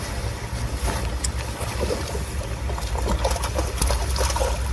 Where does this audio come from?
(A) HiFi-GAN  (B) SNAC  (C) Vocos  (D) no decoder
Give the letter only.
D